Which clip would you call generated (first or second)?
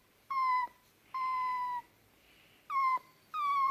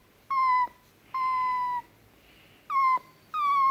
first